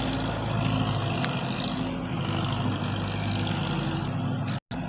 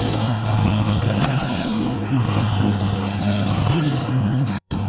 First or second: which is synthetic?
second